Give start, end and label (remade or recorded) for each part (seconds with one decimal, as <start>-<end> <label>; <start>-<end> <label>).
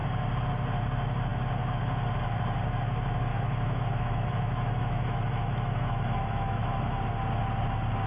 0.0-3.3 recorded; 3.3-7.0 remade; 7.0-8.1 recorded